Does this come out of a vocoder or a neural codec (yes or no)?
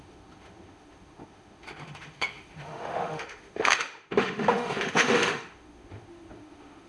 yes